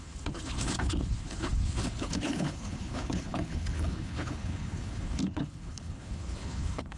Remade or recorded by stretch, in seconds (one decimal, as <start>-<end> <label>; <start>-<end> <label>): 0.0-7.0 remade